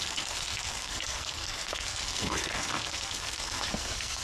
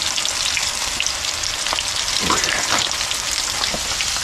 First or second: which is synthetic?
first